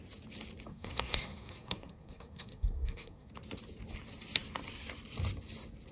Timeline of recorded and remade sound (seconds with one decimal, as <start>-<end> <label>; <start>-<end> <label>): 0.0-0.7 recorded; 0.7-3.3 remade; 3.3-5.9 recorded